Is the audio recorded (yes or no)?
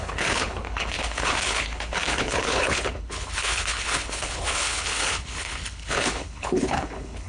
no